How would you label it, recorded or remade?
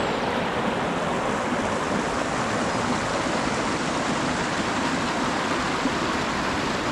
recorded